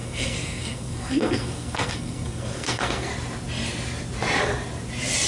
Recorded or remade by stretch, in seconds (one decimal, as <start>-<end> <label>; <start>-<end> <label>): 0.0-3.1 remade; 3.1-5.3 recorded

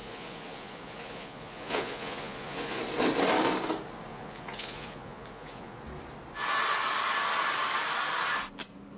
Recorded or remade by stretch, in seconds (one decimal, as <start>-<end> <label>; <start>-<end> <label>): 0.0-2.8 remade; 2.8-4.1 recorded; 4.1-5.8 remade; 5.8-9.0 recorded

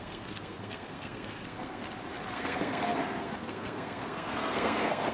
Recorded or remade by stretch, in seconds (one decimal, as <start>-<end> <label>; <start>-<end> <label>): 0.0-1.8 remade; 1.8-2.3 recorded; 2.3-5.1 remade

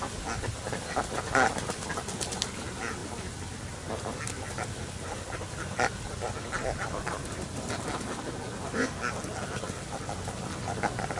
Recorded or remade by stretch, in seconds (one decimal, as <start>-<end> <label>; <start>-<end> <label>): 0.0-11.2 recorded